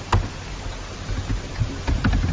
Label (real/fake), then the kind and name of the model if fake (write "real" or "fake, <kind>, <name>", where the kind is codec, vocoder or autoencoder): real